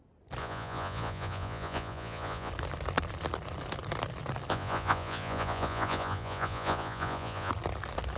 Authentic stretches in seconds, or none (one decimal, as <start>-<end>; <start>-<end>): 0.0-0.4; 2.5-4.5; 7.5-8.2

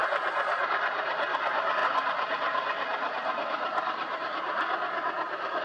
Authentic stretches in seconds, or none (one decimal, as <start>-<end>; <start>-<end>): 0.0-5.6

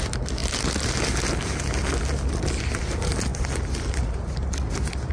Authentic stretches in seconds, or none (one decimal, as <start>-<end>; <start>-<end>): 0.0-5.1

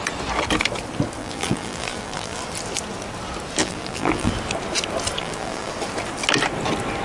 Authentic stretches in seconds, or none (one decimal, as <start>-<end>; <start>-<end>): 0.0-1.2; 2.4-3.6; 4.3-5.2; 5.7-7.0

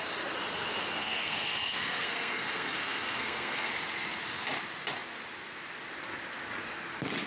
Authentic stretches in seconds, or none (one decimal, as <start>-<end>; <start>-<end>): 0.0-1.0; 3.7-7.3

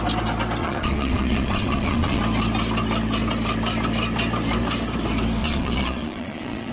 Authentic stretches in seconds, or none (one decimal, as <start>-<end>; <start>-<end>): 0.0-0.6; 2.2-5.4